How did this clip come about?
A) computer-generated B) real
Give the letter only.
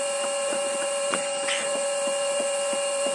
A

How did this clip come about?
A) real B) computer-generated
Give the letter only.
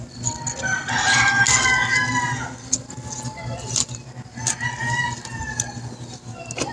A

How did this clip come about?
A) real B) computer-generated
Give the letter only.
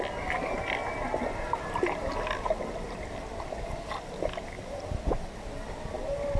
A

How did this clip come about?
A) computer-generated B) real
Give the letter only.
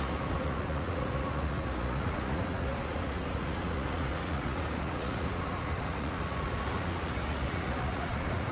A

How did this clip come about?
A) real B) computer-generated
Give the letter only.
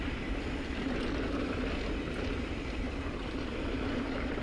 A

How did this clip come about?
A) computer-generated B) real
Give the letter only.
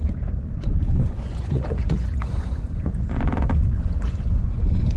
A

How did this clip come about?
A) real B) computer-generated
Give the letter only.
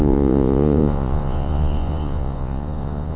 B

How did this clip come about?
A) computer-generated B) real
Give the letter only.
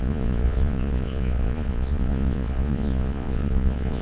A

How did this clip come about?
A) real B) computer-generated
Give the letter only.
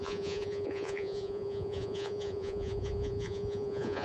B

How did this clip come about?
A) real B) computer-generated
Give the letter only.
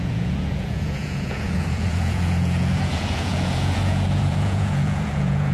B